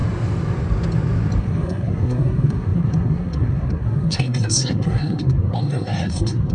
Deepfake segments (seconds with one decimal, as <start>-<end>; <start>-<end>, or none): 1.4-6.5